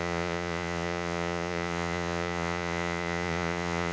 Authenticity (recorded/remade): remade